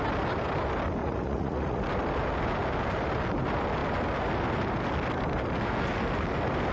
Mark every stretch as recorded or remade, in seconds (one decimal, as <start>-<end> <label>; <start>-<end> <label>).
0.0-1.0 recorded; 1.0-1.8 remade; 1.8-6.7 recorded

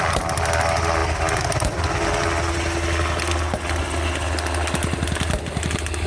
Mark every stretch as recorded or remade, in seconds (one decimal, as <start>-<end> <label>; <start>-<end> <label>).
0.0-6.1 recorded

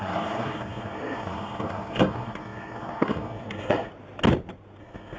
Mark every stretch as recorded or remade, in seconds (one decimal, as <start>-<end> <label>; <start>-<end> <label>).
0.0-3.9 remade; 3.9-4.8 recorded; 4.8-5.2 remade

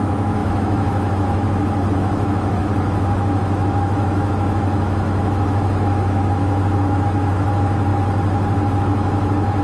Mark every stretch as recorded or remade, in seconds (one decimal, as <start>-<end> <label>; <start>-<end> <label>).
0.0-7.9 remade; 7.9-8.8 recorded; 8.8-9.6 remade

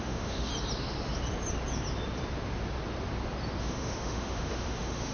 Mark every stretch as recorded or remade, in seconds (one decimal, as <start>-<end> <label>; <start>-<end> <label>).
0.0-0.5 remade; 0.5-3.6 recorded; 3.6-5.1 remade

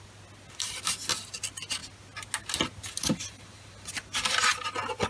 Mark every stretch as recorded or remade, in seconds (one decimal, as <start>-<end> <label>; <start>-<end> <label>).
0.0-5.1 recorded

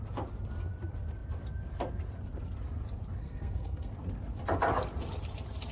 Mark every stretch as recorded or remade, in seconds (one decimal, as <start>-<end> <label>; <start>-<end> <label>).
0.0-3.2 recorded; 3.2-3.9 remade; 3.9-5.7 recorded